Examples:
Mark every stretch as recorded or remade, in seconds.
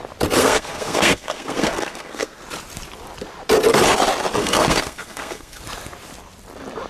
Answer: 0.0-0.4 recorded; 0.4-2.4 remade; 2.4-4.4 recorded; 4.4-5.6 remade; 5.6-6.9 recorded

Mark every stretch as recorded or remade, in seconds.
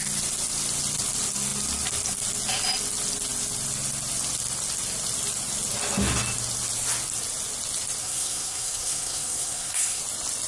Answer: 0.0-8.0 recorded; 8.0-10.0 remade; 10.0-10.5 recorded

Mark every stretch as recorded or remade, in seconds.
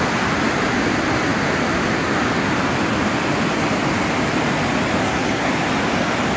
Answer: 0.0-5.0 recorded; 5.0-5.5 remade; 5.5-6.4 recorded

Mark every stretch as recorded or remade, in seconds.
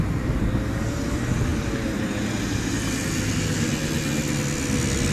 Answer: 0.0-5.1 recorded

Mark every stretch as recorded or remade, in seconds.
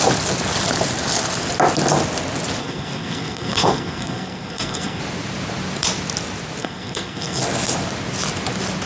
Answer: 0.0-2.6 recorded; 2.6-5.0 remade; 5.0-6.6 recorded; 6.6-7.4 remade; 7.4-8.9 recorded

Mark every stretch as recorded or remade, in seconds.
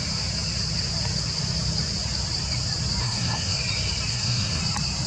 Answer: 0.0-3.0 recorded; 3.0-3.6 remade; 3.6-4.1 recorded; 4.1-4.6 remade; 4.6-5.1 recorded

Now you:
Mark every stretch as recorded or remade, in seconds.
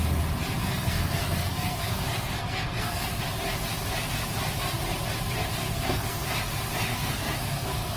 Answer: 0.0-0.6 recorded; 0.6-3.2 remade; 3.2-5.6 recorded; 5.6-6.3 remade; 6.3-6.9 recorded; 6.9-8.0 remade